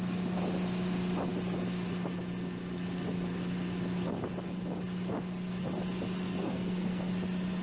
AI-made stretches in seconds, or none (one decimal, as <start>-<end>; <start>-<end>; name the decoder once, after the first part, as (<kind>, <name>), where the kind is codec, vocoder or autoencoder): 6.4-7.1 (codec, SNAC)